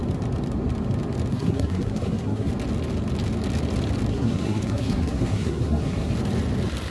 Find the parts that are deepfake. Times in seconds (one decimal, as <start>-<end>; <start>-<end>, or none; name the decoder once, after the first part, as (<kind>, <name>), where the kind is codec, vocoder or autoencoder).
1.3-2.5 (codec, SNAC); 4.1-6.1